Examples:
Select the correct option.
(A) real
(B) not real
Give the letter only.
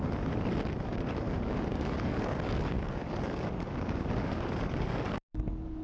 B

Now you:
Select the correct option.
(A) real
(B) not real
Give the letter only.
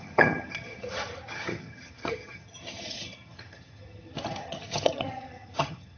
B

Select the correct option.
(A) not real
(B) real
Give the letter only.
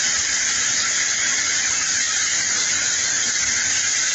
B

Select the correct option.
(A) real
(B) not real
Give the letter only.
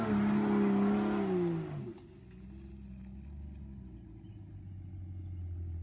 A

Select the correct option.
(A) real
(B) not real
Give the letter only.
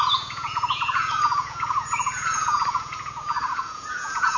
B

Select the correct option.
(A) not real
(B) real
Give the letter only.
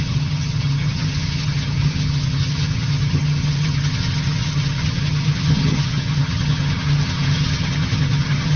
A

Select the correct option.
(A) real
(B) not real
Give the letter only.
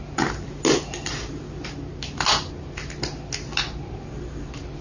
A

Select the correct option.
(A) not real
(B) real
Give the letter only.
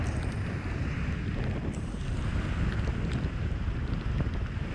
B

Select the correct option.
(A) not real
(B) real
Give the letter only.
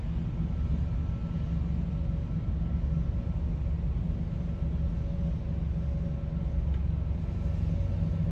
B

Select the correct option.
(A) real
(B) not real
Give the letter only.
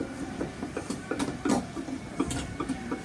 A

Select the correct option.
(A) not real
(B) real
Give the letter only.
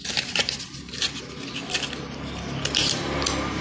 B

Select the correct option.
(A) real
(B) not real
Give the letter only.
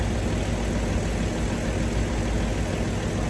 A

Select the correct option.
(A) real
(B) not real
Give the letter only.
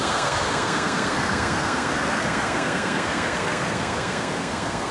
B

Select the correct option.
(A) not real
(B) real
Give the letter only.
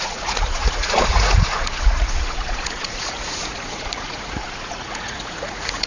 A